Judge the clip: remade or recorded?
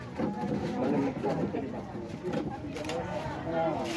remade